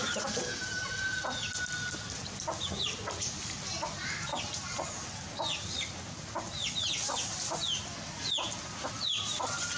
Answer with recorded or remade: recorded